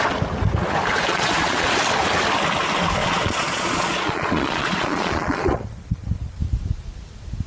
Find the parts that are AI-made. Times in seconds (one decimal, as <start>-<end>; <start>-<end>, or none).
1.1-1.8; 3.0-5.6